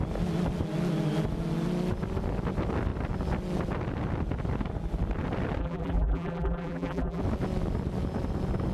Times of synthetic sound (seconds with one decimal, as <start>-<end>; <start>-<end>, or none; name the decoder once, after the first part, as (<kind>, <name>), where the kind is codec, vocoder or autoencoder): 5.6-7.2 (vocoder, BigVGAN v2)